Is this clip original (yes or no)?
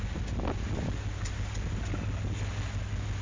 yes